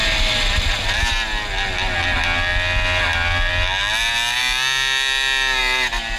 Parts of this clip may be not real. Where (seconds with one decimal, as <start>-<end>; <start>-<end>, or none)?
none